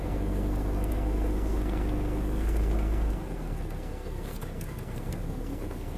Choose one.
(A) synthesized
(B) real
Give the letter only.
A